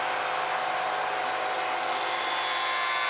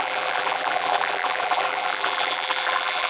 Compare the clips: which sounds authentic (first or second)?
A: first